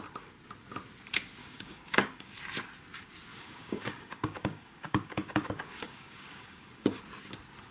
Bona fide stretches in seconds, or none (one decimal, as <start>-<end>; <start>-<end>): 0.0-1.4; 2.3-3.3; 7.0-7.7